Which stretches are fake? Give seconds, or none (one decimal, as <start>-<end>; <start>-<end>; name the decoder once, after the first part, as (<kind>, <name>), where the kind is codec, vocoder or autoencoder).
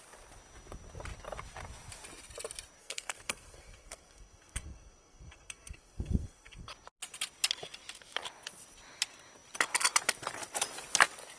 2.8-6.7 (codec, SNAC)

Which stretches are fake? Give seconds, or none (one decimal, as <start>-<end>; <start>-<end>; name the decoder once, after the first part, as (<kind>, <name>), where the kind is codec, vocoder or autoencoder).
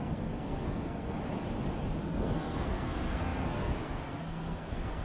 0.0-1.2 (codec, SNAC); 2.0-5.0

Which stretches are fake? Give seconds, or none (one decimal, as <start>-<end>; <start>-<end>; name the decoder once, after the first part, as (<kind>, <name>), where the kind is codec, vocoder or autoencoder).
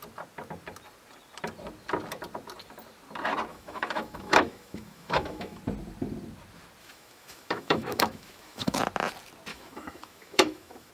3.5-5.6 (autoencoder, DAC-VAE); 6.8-8.8; 9.5-10.9